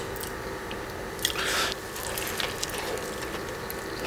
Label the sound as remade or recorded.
recorded